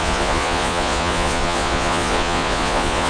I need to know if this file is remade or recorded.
remade